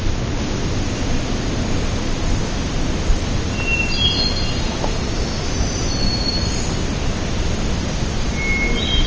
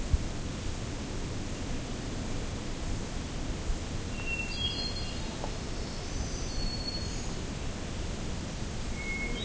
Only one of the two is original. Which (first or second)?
first